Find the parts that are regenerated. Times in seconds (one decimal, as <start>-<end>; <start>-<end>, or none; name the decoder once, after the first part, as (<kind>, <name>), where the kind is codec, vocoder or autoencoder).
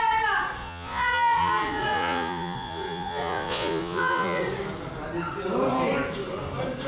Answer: 0.6-4.4 (vocoder, Vocos)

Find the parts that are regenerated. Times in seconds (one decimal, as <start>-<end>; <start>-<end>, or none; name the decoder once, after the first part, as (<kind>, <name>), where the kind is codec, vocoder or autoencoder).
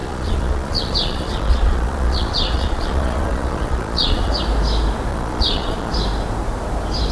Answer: 0.0-4.3 (vocoder, Vocos); 5.1-5.9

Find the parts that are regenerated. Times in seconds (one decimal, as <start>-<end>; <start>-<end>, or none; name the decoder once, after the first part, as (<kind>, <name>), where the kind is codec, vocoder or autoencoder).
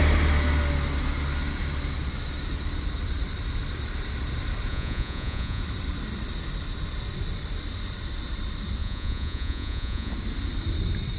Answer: 4.7-5.6 (vocoder, Vocos); 8.8-10.1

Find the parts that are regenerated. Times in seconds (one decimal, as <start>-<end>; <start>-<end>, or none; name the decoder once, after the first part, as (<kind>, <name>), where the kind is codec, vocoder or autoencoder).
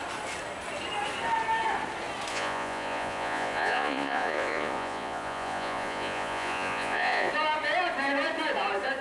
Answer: 2.3-7.3 (vocoder, Vocos)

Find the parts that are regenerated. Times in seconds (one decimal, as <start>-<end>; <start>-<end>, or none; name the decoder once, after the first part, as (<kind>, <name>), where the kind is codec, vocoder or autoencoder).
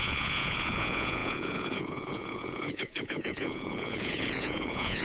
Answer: 0.0-5.0 (vocoder, Vocos)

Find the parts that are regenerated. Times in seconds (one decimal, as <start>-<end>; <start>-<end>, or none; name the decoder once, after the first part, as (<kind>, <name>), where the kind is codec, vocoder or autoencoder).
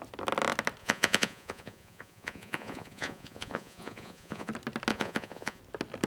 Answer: 0.8-4.5 (vocoder, Vocos); 4.9-5.6